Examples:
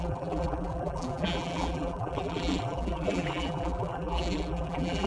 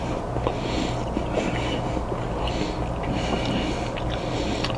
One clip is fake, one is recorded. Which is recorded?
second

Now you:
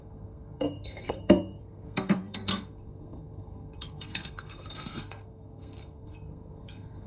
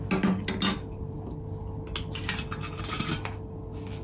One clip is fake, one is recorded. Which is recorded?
second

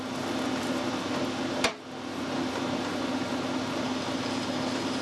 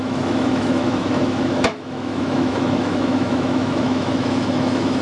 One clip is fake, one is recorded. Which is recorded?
first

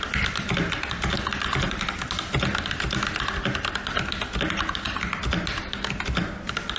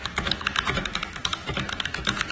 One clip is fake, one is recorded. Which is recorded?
first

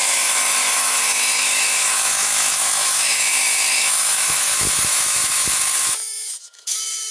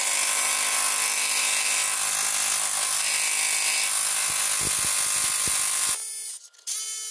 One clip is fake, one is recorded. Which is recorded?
second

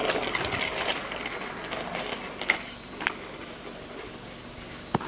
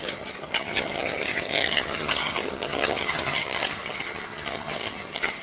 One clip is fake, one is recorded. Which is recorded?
first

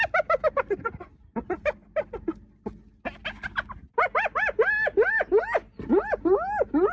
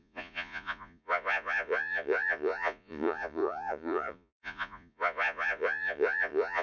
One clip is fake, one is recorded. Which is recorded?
first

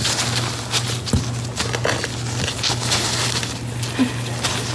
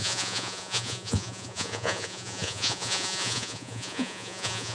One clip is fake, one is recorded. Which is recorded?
first